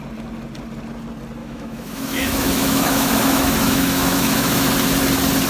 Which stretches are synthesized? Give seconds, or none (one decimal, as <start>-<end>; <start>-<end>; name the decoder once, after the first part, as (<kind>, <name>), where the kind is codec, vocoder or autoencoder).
1.4-4.7 (autoencoder, DAC-VAE)